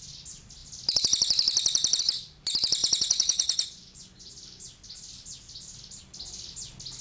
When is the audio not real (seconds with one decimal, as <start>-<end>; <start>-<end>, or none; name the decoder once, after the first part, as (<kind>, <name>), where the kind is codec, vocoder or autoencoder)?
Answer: 2.8-4.3 (vocoder, Vocos)